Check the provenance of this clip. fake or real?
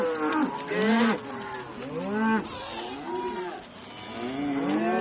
real